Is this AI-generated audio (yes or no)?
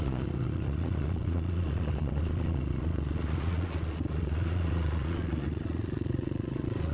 yes